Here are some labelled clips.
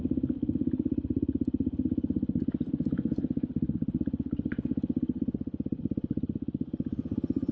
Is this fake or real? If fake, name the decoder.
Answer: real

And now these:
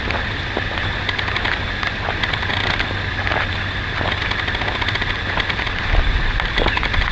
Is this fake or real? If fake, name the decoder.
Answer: real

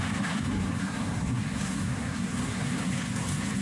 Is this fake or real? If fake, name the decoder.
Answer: fake, codec, SNAC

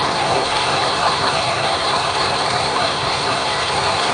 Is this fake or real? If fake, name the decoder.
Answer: fake, codec, SNAC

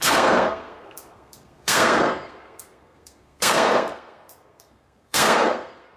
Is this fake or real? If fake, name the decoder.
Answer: fake, codec, SNAC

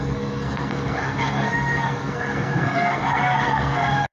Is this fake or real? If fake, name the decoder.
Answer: fake, codec, SNAC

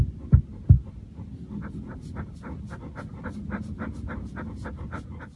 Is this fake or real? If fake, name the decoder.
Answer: real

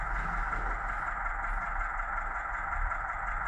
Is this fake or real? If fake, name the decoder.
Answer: real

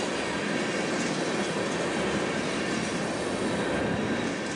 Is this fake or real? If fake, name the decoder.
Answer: real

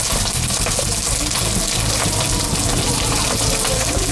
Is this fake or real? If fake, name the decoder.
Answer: real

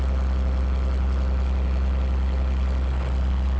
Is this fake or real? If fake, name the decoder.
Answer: real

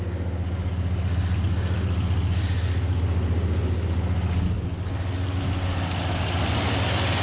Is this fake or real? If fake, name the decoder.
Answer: real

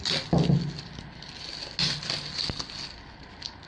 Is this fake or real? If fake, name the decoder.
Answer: real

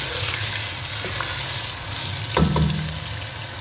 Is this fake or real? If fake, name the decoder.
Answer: real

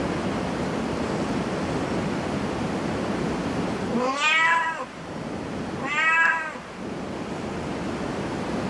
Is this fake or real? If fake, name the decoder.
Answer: real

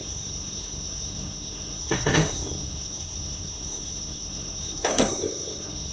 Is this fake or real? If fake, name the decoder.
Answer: fake, codec, SNAC